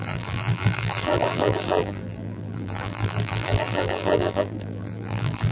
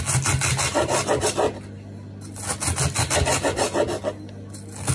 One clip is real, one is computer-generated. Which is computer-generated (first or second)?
first